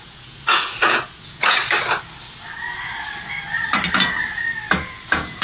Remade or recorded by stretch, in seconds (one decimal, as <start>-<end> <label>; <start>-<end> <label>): 0.0-1.6 remade; 1.6-4.8 recorded; 4.8-5.4 remade